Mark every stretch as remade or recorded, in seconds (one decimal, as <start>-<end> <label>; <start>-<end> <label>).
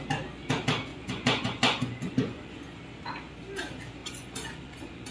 0.0-0.9 recorded; 0.9-2.8 remade; 2.8-4.0 recorded; 4.0-5.1 remade